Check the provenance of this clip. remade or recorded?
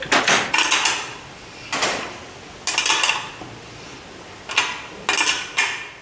recorded